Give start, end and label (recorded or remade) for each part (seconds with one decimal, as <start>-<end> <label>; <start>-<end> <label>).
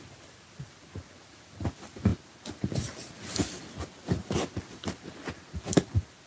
0.0-6.3 recorded